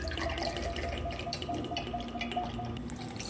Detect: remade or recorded recorded